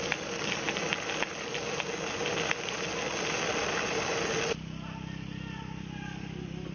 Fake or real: real